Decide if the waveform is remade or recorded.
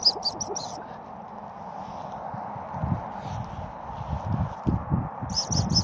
recorded